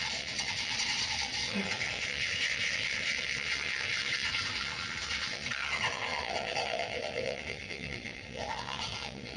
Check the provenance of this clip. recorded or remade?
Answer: remade